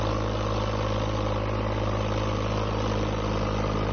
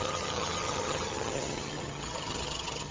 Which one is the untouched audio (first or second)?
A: first